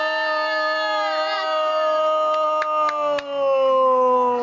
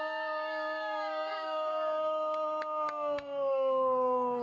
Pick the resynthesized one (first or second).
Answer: second